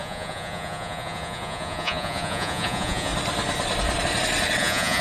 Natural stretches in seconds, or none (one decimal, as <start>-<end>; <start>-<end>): 3.1-4.6